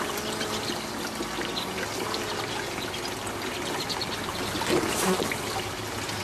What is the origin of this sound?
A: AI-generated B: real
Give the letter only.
B